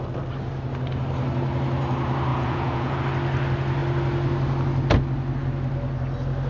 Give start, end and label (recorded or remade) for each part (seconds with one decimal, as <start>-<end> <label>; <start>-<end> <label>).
0.0-2.3 recorded; 2.3-3.0 remade; 3.0-6.5 recorded